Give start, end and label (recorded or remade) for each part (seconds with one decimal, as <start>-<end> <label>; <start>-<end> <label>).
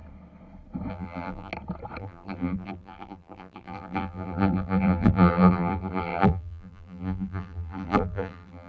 0.0-0.9 recorded; 0.9-1.5 remade; 1.5-2.0 recorded; 2.0-8.7 remade